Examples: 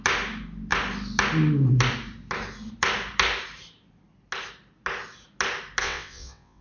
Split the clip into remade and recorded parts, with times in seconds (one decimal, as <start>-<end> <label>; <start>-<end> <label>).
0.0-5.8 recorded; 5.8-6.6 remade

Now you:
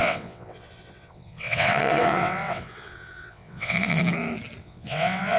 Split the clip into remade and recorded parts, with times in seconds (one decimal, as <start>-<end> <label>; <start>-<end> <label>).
0.0-4.0 remade; 4.0-4.6 recorded; 4.6-5.4 remade

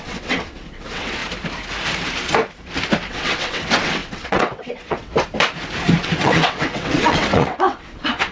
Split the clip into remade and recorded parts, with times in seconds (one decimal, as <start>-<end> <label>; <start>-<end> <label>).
0.0-1.2 remade; 1.2-3.1 recorded; 3.1-5.1 remade; 5.1-6.0 recorded; 6.0-8.3 remade

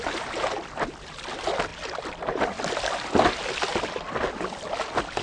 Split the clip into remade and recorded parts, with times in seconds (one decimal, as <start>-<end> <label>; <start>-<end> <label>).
0.0-5.2 recorded